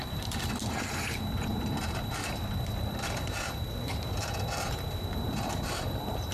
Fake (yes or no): yes